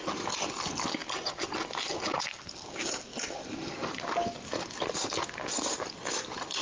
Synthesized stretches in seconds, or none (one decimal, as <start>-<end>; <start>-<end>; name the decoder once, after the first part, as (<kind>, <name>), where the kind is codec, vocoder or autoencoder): none